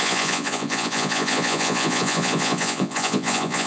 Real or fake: fake